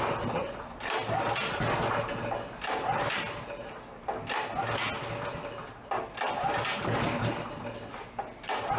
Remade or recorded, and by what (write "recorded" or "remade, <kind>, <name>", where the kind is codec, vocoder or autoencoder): recorded